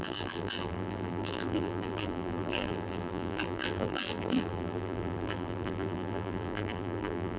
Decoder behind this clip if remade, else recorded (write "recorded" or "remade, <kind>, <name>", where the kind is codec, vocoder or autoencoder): remade, vocoder, BigVGAN v2